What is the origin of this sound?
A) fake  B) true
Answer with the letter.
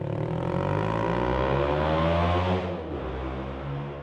B